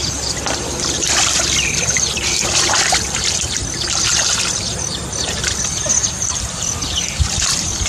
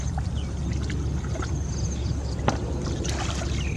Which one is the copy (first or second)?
first